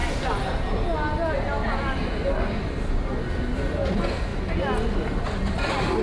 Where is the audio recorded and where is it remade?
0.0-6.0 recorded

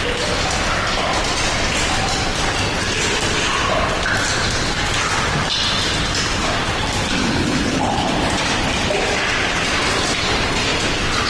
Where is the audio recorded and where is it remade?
0.0-7.2 recorded; 7.2-8.1 remade; 8.1-11.3 recorded

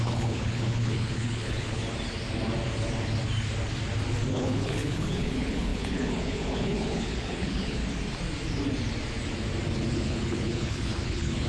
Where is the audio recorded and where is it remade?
0.0-1.8 remade; 1.8-4.3 recorded; 4.3-7.8 remade; 7.8-9.9 recorded; 9.9-11.5 remade

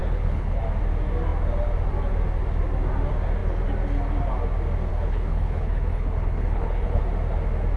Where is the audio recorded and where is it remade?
0.0-0.6 remade; 0.6-4.9 recorded; 4.9-7.0 remade; 7.0-7.8 recorded

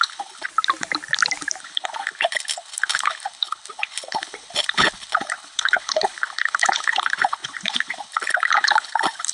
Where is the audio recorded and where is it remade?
0.0-0.5 remade; 0.5-1.6 recorded; 1.6-9.3 remade

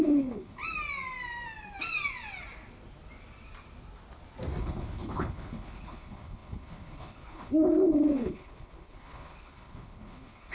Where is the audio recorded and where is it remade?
0.0-0.6 remade; 0.6-4.6 recorded; 4.6-10.5 remade

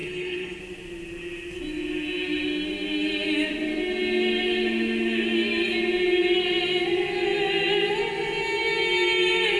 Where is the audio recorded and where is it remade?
0.0-0.6 remade; 0.6-9.6 recorded